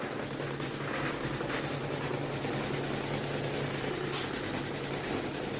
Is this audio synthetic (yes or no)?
no